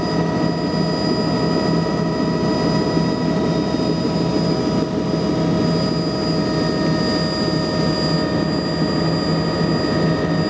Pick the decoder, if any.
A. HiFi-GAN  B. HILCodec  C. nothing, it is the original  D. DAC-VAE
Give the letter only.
C